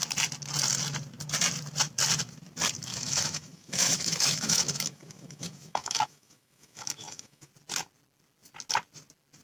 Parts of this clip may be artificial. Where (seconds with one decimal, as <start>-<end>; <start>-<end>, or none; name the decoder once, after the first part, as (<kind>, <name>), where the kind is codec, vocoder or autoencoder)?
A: 2.9-7.5 (autoencoder, DAC-VAE)